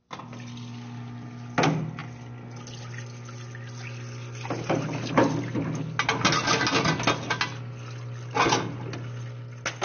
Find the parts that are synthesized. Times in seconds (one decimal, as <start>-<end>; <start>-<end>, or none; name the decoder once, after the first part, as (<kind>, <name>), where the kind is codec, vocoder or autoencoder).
none